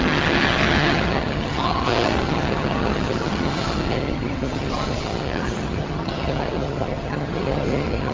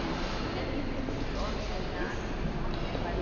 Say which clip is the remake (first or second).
first